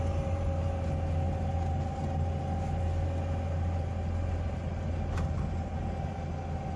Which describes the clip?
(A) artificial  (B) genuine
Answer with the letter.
B